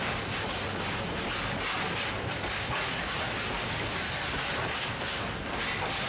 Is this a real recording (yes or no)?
yes